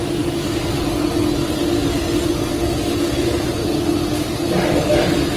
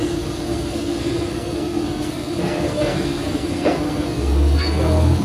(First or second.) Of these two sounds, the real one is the first